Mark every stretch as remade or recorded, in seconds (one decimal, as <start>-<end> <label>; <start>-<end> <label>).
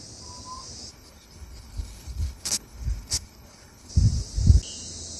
0.0-0.9 recorded; 0.9-3.9 remade; 3.9-5.2 recorded